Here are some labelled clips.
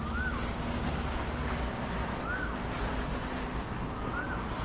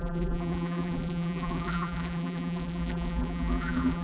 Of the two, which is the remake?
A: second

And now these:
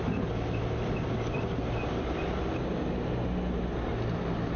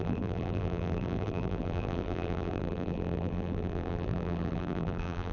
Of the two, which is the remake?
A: second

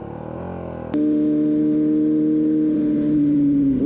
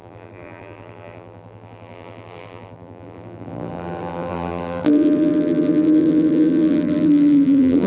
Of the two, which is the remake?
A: second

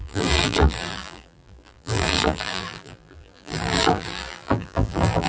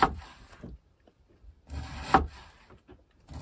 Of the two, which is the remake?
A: first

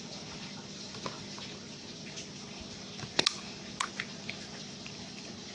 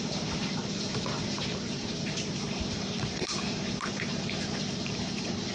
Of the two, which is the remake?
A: second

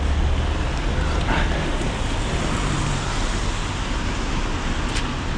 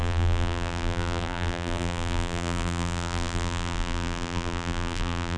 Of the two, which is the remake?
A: second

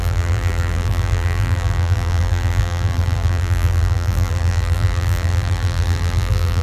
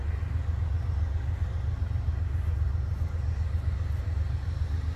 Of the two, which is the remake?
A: first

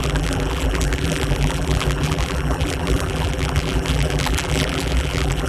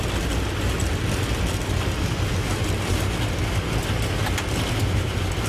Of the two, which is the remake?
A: first